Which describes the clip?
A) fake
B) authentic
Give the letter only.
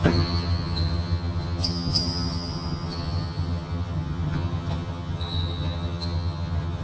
A